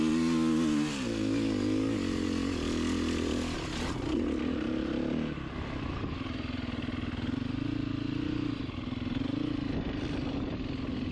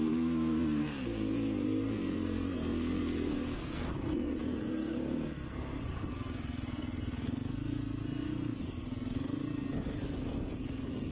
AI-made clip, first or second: second